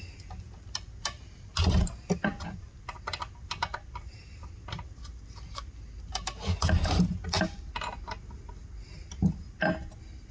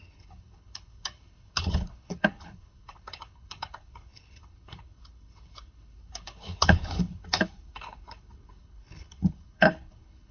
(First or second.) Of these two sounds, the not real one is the second